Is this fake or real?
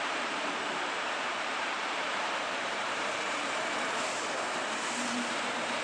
fake